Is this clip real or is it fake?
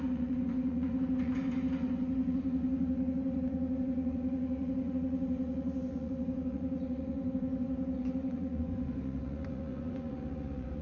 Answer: fake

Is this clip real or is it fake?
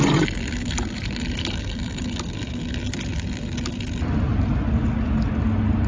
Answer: real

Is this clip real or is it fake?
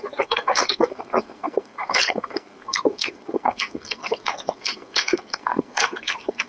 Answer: fake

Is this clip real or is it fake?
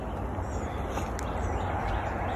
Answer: real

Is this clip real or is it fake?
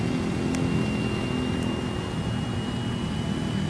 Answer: real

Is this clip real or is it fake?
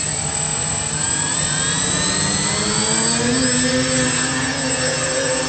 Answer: real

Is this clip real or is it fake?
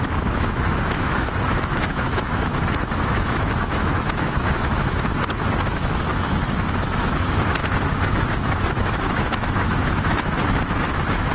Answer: fake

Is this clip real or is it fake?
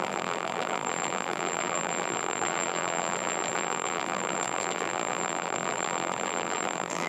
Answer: fake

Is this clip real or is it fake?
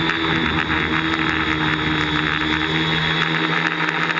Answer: real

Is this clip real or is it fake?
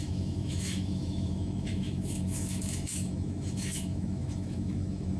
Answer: fake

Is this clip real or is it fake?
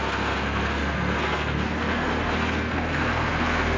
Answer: fake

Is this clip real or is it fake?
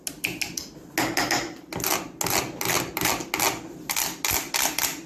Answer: real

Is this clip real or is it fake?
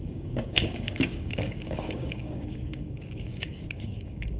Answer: fake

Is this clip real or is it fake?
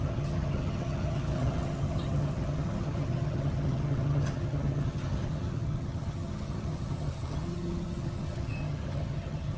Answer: fake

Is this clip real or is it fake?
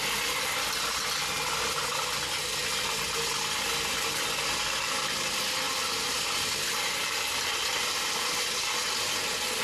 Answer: real